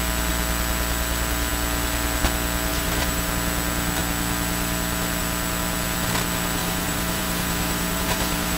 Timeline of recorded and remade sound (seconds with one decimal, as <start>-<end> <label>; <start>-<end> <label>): 0.0-2.7 recorded; 2.7-3.3 remade; 3.3-6.6 recorded; 6.6-8.6 remade